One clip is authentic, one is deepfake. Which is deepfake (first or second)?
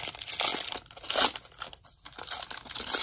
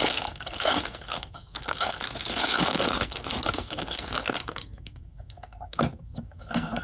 second